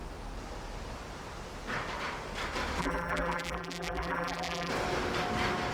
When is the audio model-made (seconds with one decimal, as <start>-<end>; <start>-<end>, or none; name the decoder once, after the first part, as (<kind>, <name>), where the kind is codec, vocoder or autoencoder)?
2.8-4.7 (vocoder, BigVGAN v2)